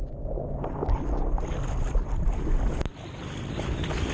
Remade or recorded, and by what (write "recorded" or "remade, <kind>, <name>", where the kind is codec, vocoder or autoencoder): recorded